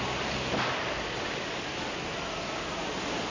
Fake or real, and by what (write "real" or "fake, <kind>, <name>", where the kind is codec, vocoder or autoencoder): real